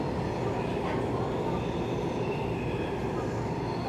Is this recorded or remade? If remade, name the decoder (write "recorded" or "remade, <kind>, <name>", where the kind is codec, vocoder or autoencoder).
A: recorded